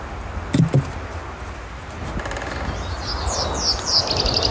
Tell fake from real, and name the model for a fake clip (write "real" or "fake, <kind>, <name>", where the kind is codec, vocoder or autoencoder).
real